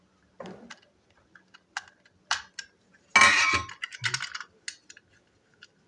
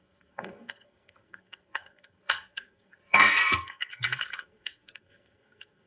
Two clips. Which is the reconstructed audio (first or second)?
second